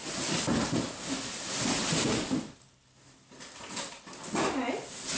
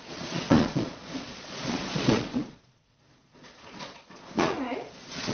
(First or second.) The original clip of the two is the first